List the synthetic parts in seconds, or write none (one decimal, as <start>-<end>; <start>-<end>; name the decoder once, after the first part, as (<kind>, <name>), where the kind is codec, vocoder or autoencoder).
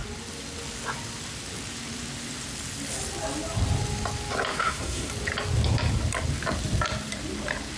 4.5-5.1 (codec, SNAC)